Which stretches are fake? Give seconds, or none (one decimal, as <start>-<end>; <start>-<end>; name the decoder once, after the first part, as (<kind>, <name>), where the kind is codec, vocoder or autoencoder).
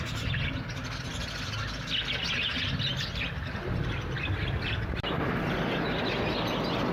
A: none